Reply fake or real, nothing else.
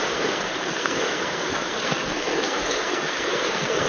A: fake